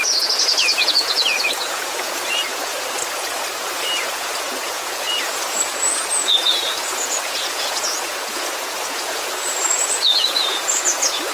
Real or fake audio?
fake